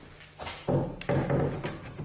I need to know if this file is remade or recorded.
recorded